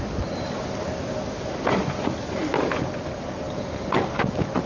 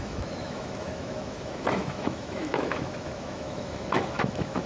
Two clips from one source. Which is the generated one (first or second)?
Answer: second